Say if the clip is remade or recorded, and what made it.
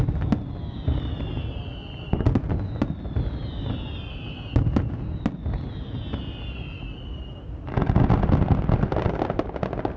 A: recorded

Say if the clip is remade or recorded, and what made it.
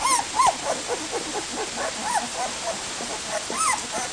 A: recorded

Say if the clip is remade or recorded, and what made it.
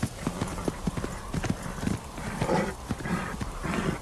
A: recorded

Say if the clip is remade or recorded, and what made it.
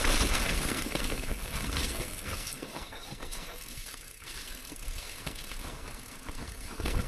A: remade, codec, SNAC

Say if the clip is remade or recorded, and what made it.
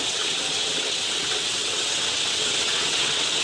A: remade, vocoder, WaveNeXt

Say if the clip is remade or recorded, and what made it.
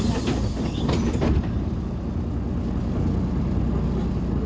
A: recorded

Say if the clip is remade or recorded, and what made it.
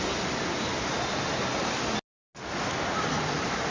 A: recorded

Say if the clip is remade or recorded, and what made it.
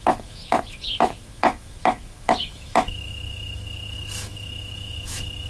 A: remade, autoencoder, DAC-VAE